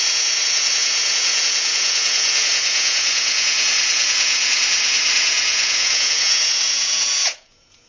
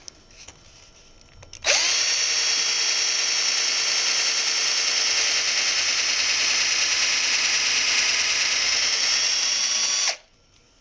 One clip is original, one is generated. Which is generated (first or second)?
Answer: first